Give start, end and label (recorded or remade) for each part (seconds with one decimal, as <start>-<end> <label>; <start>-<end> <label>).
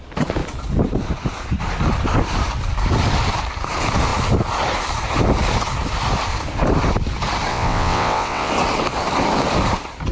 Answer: 0.0-7.5 recorded; 7.5-8.5 remade; 8.5-10.1 recorded